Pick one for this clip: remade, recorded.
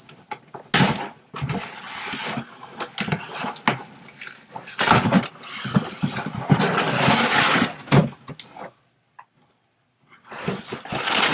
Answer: recorded